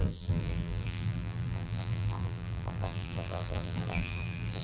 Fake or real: fake